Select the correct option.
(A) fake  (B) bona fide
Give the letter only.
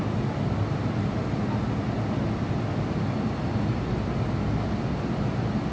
B